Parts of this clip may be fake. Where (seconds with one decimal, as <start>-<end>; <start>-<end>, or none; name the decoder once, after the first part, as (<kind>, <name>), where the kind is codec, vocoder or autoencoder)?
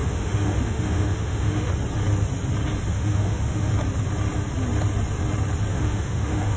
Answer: 0.0-1.7 (autoencoder, DAC-VAE); 2.9-3.7; 5.7-6.6